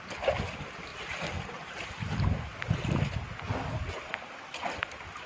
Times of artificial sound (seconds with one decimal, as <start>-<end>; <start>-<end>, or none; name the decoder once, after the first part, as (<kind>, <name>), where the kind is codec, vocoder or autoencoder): none